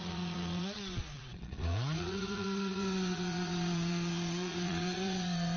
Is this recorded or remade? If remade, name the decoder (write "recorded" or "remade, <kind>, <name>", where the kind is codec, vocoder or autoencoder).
remade, vocoder, Vocos